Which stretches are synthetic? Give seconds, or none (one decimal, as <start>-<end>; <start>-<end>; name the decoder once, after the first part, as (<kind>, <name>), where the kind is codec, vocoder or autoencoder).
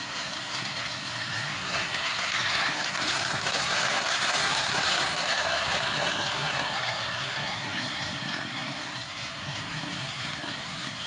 0.0-11.1 (codec, SNAC)